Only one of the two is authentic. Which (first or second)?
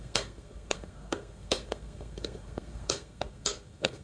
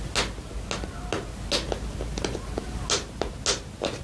second